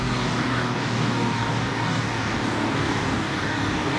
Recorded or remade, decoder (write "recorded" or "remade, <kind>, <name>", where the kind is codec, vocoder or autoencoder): remade, codec, DAC